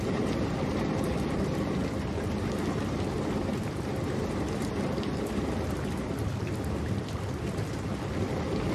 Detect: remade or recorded recorded